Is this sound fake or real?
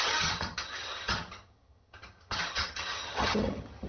fake